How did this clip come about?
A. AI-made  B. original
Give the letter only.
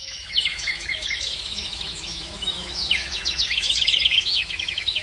A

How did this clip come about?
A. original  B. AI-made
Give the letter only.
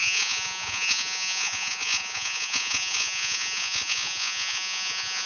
B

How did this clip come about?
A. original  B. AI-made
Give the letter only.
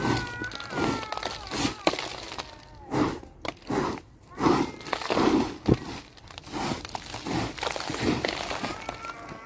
A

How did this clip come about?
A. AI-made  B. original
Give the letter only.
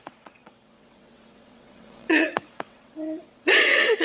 A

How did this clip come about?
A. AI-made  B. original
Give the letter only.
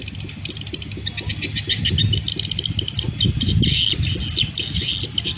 B